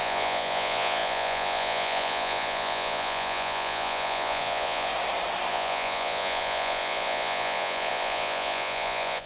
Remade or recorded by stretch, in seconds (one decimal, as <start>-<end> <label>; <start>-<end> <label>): 0.0-4.9 remade; 4.9-5.5 recorded; 5.5-9.3 remade